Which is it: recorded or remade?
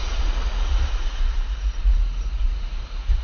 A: remade